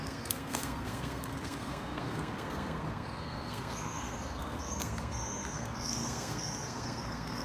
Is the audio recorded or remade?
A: remade